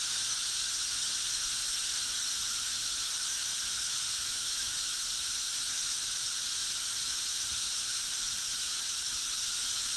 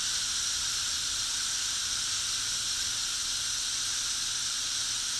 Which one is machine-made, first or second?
first